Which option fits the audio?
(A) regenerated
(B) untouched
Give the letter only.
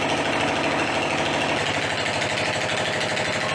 B